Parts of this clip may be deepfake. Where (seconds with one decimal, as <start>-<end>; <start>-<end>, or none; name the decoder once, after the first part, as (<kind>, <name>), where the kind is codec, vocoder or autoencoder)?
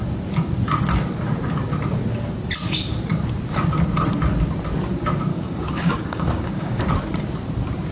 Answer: 5.3-6.8 (codec, DAC)